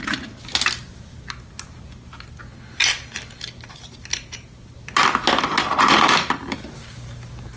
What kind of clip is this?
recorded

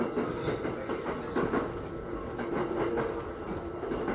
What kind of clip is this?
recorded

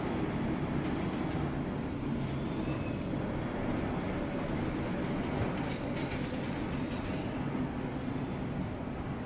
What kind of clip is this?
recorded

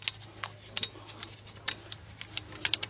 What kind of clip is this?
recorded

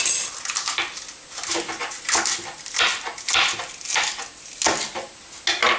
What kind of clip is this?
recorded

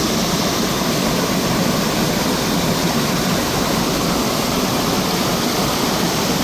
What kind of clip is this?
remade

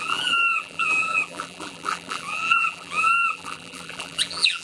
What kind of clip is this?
remade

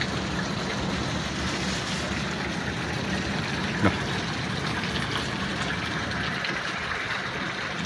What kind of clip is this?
recorded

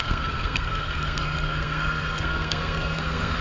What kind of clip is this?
remade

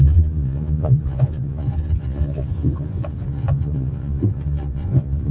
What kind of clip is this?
remade